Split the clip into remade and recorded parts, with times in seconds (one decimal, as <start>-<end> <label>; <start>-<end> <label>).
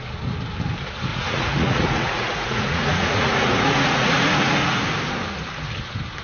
0.0-1.1 recorded; 1.1-4.8 remade; 4.8-6.2 recorded